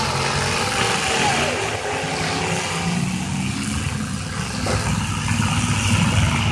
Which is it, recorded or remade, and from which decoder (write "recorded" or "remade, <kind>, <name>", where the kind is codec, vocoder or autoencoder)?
recorded